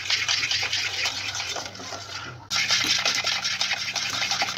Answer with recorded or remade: recorded